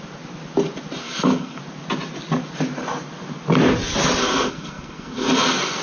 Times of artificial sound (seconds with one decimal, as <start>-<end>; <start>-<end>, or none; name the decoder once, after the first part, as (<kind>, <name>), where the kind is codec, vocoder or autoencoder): 1.0-1.6 (codec, SNAC); 4.2-5.8